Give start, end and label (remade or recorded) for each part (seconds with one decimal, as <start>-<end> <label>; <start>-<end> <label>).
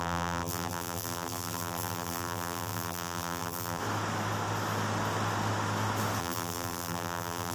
0.0-3.8 remade; 3.8-6.2 recorded; 6.2-7.5 remade